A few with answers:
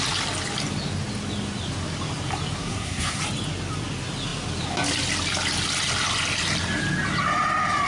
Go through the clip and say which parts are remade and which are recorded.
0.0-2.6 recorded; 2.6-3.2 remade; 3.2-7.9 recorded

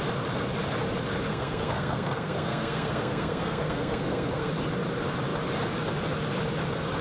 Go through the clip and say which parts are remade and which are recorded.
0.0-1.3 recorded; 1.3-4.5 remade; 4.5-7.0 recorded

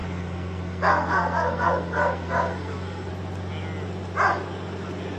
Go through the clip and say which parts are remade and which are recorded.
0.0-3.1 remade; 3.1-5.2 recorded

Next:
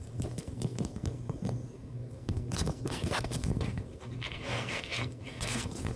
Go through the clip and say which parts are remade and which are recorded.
0.0-6.0 remade